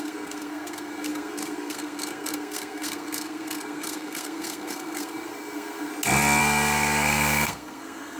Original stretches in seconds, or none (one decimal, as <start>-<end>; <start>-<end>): 5.9-6.4